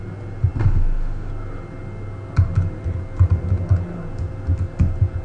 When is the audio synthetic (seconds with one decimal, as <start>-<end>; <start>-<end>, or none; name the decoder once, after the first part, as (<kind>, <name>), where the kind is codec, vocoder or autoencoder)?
0.6-1.3 (autoencoder, DAC-VAE)